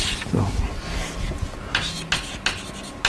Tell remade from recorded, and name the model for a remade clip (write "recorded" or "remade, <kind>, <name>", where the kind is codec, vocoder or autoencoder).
recorded